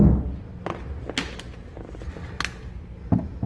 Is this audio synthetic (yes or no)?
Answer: no